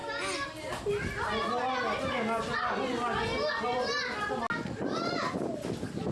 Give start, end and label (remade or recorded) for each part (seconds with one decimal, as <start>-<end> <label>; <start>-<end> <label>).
0.0-6.1 recorded